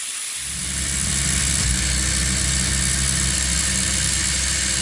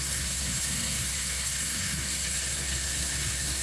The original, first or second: first